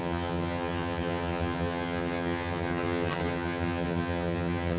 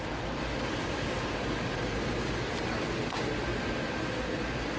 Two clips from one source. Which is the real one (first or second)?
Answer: second